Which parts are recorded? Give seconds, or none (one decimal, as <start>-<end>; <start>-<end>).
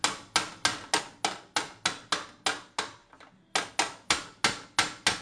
0.0-5.2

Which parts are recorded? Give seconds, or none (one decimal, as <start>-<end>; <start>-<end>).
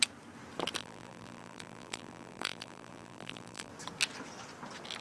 0.0-0.8; 3.7-5.0